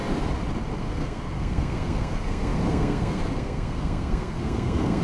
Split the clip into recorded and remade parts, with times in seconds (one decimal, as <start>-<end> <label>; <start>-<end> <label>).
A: 0.0-0.8 recorded; 0.8-5.0 remade